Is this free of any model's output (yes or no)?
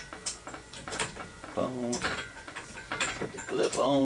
no